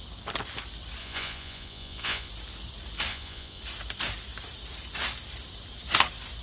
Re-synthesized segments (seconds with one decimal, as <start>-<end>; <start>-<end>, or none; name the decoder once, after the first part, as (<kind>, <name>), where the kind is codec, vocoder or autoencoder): 1.0-2.3 (vocoder, Vocos); 3.1-3.6